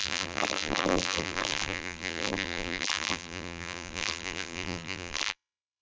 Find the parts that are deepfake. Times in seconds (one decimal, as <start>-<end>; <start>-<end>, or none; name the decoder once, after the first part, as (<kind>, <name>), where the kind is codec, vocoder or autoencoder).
0.0-5.8 (vocoder, BigVGAN v2)